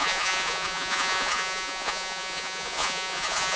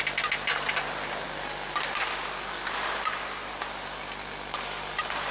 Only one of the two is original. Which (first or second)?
second